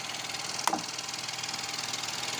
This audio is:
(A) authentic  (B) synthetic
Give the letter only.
A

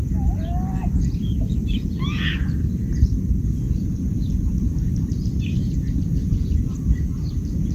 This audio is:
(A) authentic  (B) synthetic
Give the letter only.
B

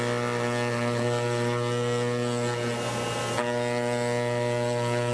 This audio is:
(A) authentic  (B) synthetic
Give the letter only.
A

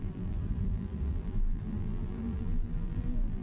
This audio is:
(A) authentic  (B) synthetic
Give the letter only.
B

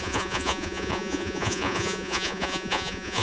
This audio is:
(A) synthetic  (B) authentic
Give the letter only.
A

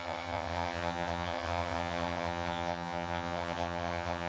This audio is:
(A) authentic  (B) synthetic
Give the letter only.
B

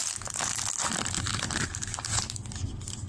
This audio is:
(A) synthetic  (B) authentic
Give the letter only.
B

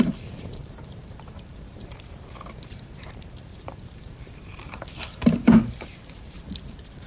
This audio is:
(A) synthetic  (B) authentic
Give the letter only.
A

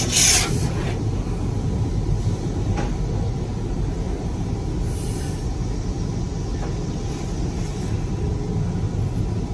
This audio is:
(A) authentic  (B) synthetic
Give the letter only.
A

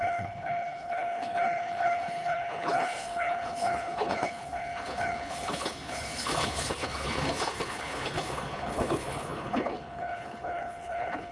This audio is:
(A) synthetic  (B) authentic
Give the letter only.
A